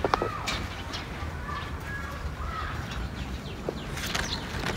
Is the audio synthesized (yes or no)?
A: no